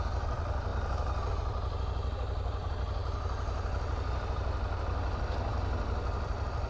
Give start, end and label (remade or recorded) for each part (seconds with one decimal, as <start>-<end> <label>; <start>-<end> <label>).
0.0-0.7 remade; 0.7-1.3 recorded; 1.3-3.0 remade; 3.0-4.1 recorded; 4.1-6.7 remade